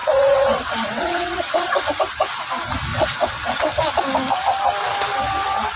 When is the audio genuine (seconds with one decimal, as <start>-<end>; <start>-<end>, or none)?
1.9-2.9; 3.6-5.8